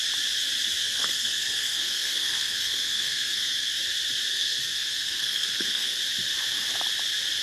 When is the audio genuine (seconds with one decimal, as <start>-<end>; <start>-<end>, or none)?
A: 0.0-0.8; 3.7-4.3; 6.0-7.4